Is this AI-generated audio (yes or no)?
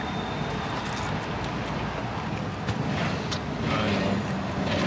no